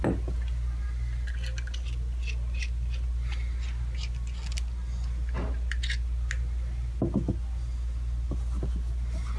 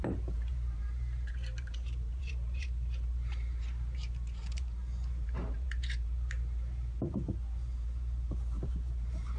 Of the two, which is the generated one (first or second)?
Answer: second